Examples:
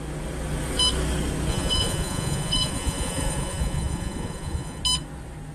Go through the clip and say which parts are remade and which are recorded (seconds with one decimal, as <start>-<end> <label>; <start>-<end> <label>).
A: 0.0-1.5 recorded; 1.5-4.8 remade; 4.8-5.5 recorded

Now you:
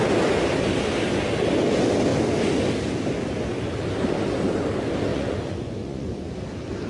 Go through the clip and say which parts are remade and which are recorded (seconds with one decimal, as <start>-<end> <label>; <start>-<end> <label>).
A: 0.0-5.1 recorded; 5.1-6.3 remade; 6.3-6.9 recorded

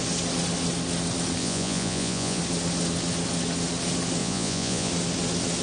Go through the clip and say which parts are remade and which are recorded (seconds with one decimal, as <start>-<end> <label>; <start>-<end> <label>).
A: 0.0-1.4 recorded; 1.4-2.4 remade; 2.4-4.2 recorded; 4.2-4.9 remade; 4.9-5.6 recorded

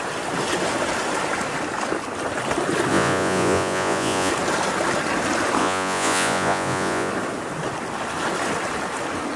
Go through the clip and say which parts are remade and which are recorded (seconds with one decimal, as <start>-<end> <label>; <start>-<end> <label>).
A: 0.0-2.9 recorded; 2.9-4.3 remade; 4.3-5.6 recorded; 5.6-7.1 remade; 7.1-9.4 recorded

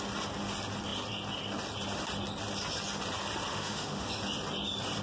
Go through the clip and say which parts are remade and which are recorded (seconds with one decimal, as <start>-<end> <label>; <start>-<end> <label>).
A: 0.0-3.5 recorded; 3.5-4.1 remade; 4.1-5.0 recorded